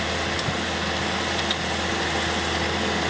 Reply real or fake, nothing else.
real